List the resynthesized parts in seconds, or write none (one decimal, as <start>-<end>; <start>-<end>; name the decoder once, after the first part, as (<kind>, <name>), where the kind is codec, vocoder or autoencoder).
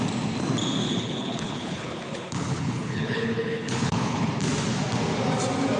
0.8-4.3 (codec, HILCodec)